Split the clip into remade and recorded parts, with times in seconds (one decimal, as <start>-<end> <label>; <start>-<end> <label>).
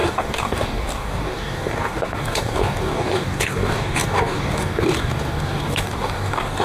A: 0.0-6.6 remade